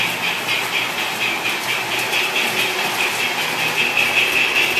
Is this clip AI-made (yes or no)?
no